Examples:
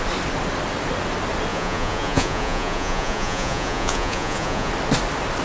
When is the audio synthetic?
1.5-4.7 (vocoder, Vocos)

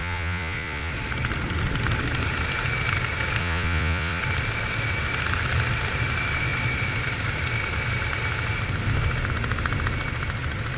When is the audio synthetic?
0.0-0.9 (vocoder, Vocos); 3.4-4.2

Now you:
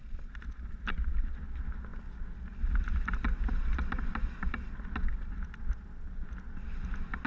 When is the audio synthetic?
none

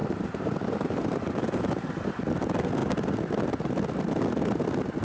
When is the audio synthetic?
0.0-2.2 (vocoder, BigVGAN v2)

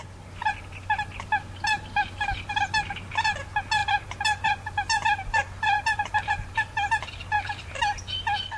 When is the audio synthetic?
3.8-7.8 (vocoder, BigVGAN v2)

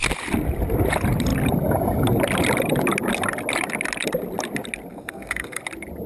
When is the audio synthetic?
4.9-5.6 (codec, SNAC)

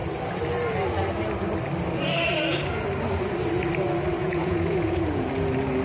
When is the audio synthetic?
4.2-5.3 (vocoder, Vocos)